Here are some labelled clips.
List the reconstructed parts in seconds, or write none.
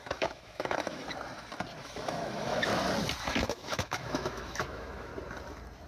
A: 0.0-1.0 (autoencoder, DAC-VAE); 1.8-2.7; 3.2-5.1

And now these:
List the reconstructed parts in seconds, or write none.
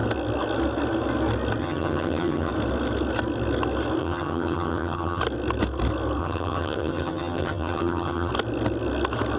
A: 1.6-2.5 (vocoder, HiFi-GAN); 4.0-5.2; 6.2-8.3